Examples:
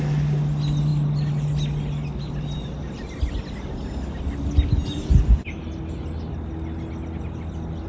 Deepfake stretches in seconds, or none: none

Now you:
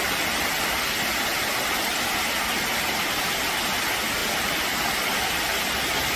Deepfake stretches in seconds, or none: 1.3-3.6 (vocoder, BigVGAN v2); 4.2-5.4

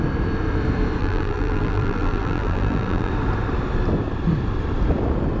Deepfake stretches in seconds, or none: 1.0-3.1 (vocoder, BigVGAN v2)